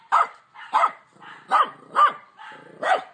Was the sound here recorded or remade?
recorded